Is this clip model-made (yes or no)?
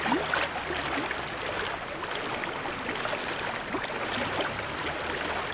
no